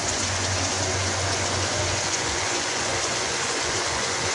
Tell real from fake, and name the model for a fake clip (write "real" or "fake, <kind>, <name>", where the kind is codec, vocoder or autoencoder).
fake, vocoder, Vocos